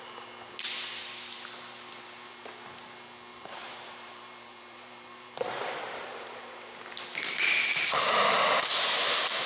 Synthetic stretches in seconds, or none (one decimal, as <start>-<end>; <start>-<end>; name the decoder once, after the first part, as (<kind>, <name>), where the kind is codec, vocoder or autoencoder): 3.3-6.1 (vocoder, BigVGAN v2)

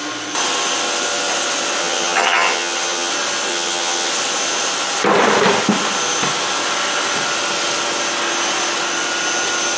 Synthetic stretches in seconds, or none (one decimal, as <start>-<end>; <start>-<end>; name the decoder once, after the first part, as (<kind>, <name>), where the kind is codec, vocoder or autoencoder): 1.8-3.1 (vocoder, HiFi-GAN); 3.5-4.1

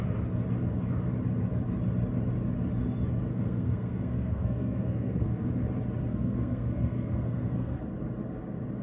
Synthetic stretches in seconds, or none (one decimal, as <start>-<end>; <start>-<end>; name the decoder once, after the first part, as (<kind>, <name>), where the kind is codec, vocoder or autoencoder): 3.3-5.5 (codec, SNAC); 6.1-7.8